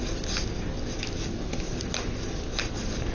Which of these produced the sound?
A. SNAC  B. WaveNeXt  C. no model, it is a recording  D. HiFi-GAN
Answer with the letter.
C